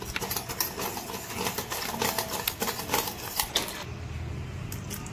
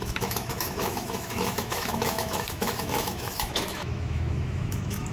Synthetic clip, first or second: second